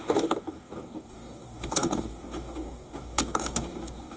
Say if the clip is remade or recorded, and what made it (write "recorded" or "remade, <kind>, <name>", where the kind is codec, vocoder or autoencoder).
remade, codec, DAC